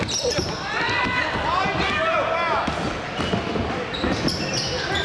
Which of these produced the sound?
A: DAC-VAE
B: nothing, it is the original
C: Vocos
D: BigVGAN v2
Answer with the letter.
B